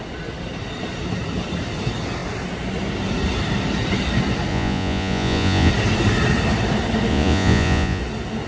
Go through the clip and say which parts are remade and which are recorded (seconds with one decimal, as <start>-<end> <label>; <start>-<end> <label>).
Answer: 0.0-4.5 recorded; 4.5-5.7 remade; 5.7-7.1 recorded; 7.1-8.0 remade; 8.0-8.5 recorded